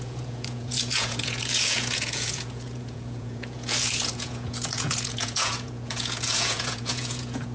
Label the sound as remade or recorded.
remade